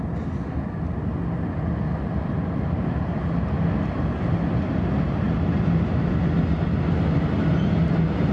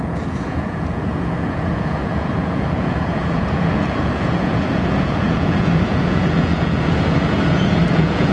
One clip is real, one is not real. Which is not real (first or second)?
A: second